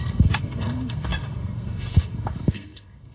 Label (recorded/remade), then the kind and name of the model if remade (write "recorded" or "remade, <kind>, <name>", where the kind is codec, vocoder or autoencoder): remade, codec, SNAC